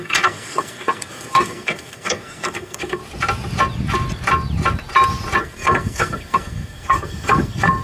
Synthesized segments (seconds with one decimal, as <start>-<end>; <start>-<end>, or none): 0.0-3.0; 5.4-7.8